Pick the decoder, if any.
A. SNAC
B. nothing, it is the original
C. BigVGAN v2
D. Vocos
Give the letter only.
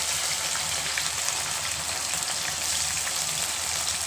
C